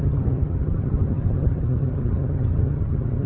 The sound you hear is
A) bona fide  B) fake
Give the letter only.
B